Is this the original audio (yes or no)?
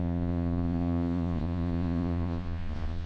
no